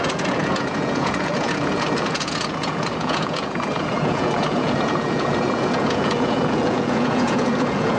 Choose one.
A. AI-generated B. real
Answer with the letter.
A